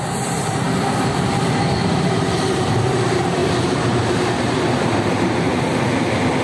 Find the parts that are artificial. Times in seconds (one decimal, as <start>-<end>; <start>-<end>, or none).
0.0-5.5